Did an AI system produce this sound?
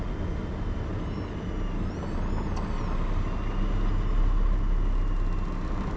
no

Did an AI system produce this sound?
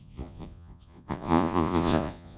yes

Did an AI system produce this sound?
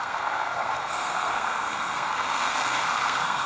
yes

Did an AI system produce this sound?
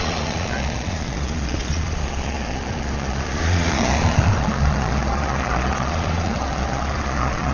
yes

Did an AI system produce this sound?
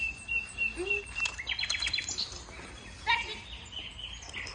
no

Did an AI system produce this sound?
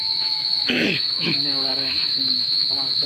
yes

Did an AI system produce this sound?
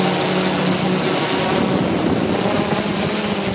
no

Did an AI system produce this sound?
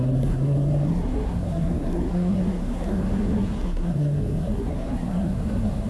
yes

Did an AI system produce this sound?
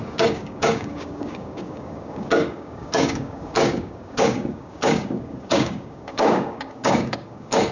yes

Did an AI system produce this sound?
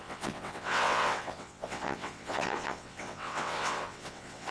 yes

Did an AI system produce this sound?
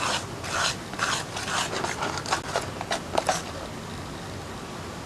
no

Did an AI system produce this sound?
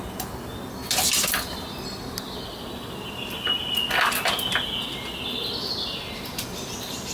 no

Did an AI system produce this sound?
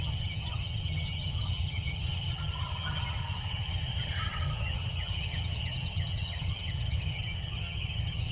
yes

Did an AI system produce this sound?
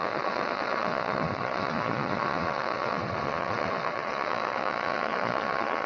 yes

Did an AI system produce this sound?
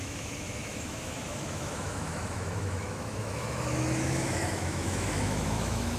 yes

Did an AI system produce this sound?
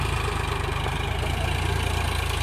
no